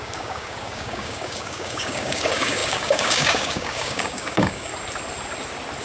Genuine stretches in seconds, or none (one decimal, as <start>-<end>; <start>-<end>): 4.7-5.8